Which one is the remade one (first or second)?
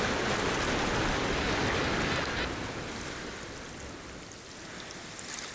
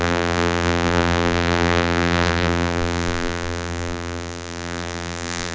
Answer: second